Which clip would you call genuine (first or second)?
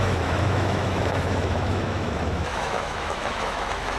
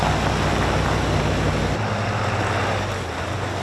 second